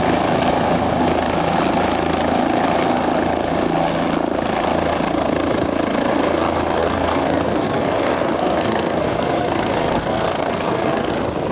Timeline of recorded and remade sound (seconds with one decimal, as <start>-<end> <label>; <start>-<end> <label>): 0.0-6.8 recorded; 6.8-11.1 remade; 11.1-11.5 recorded